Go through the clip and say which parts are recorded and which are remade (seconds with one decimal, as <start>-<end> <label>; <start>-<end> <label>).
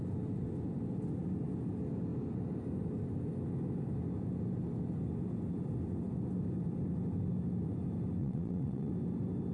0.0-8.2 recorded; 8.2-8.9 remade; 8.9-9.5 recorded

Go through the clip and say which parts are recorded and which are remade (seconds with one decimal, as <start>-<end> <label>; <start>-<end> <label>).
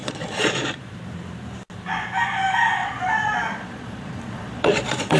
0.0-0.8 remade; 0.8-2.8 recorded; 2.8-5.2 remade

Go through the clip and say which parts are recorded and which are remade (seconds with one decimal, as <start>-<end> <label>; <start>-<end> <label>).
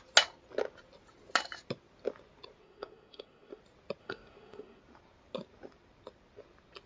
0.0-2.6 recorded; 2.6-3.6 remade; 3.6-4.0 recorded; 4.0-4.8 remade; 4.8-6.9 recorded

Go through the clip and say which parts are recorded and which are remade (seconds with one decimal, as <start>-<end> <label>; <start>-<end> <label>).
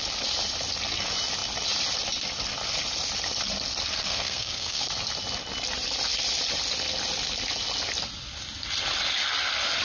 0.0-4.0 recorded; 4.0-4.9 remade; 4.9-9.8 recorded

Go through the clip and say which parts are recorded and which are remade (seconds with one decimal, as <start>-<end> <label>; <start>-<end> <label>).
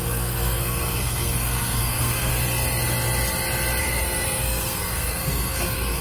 0.0-2.3 remade; 2.3-3.8 recorded; 3.8-6.0 remade